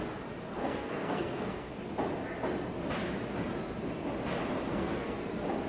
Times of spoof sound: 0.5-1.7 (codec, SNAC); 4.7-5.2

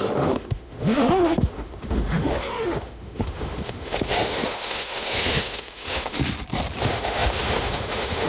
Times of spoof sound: 0.0-6.2 (autoencoder, DAC-VAE); 6.8-8.3

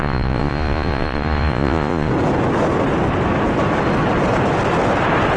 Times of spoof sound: 0.0-2.1 (vocoder, Vocos)

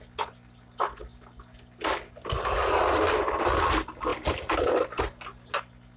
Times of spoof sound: none

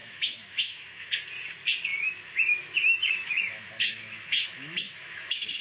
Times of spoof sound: 0.0-1.1 (autoencoder, DAC-VAE); 1.9-5.6